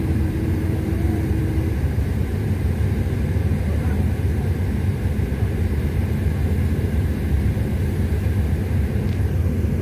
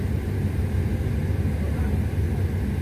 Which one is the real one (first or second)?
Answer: second